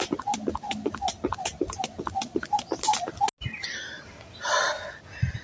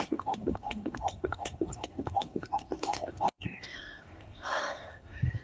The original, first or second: first